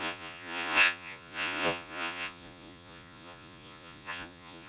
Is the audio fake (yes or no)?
yes